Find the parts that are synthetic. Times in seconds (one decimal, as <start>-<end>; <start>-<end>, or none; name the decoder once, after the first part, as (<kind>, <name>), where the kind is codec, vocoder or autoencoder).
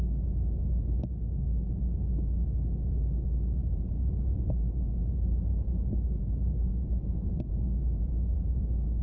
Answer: 0.7-1.2 (vocoder, BigVGAN v2); 3.6-8.6